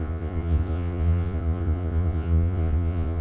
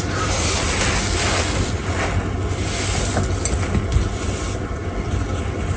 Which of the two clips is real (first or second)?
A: second